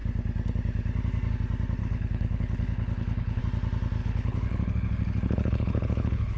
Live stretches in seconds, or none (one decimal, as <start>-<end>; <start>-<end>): 0.0-1.8; 3.4-4.0